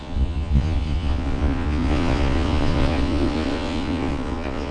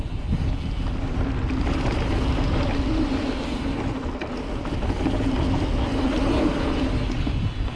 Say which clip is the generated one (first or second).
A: first